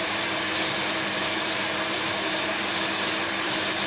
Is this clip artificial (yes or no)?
yes